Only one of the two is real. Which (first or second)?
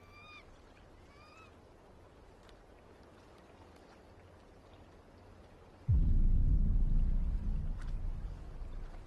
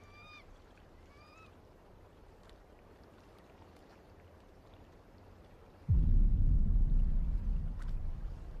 first